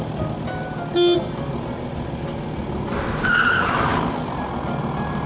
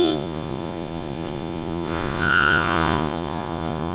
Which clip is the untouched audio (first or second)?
first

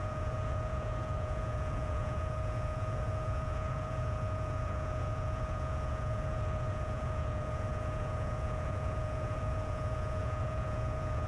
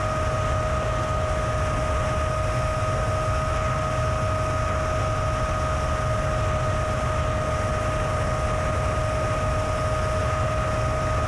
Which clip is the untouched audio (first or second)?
second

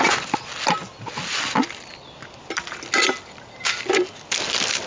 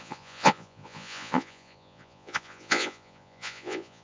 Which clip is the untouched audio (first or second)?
first